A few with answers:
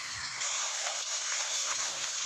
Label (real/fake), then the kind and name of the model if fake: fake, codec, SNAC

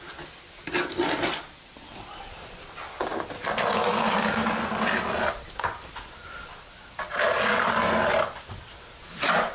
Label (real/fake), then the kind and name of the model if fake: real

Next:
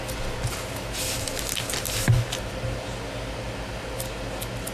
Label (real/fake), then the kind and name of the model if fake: real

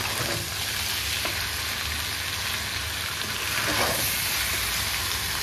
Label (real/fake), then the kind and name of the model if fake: real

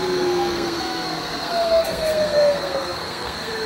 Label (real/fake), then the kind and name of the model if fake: fake, codec, SNAC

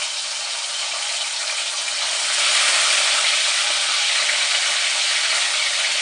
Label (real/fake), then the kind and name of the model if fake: real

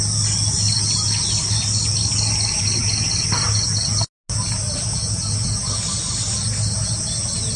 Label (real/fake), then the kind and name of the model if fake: real